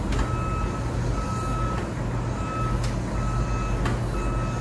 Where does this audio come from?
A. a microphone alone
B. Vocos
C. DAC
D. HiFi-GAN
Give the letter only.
A